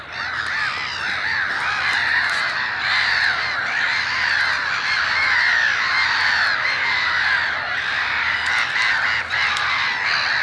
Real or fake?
real